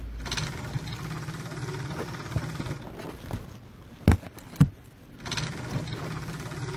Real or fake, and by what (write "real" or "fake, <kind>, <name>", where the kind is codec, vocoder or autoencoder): real